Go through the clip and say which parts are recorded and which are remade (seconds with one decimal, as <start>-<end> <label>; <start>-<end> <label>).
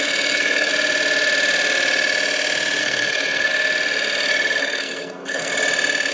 0.0-0.7 remade; 0.7-2.8 recorded; 2.8-3.5 remade; 3.5-4.6 recorded; 4.6-5.5 remade; 5.5-6.1 recorded